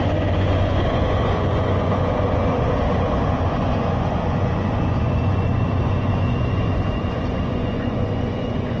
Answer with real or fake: fake